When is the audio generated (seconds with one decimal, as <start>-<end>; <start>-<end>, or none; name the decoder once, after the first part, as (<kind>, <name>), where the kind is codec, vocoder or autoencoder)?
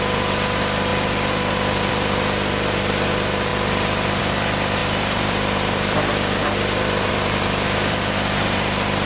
0.0-9.1 (vocoder, BigVGAN v2)